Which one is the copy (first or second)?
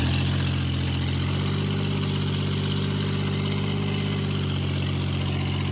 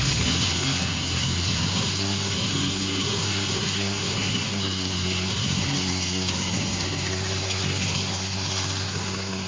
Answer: second